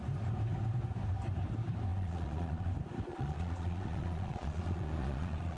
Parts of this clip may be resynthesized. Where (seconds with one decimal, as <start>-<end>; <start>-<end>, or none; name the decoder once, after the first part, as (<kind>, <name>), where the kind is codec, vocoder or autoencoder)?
1.9-2.7 (vocoder, Vocos); 3.1-5.6